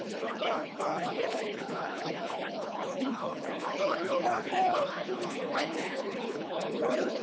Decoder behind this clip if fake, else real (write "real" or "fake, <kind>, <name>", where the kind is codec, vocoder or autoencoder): fake, codec, HILCodec